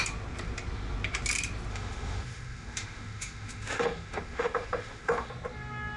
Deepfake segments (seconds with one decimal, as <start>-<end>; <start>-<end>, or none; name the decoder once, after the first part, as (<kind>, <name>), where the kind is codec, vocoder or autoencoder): 1.7-5.3 (autoencoder, DAC-VAE)